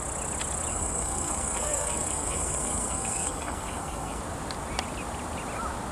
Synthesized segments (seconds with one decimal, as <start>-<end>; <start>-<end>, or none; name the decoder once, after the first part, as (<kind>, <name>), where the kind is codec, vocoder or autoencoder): 0.7-4.2 (codec, SNAC)